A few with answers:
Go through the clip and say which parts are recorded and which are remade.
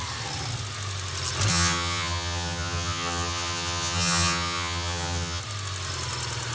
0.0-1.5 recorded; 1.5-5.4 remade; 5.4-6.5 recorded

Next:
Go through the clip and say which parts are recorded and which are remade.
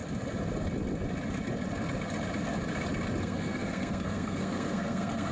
0.0-3.2 recorded; 3.2-5.3 remade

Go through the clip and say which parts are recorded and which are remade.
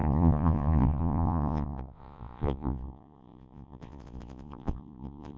0.0-5.4 remade